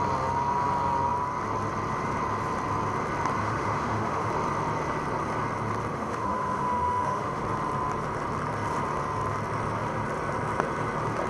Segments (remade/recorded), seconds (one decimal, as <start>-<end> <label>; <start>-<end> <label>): 0.0-3.4 recorded; 3.4-4.3 remade; 4.3-5.9 recorded; 5.9-7.4 remade; 7.4-11.3 recorded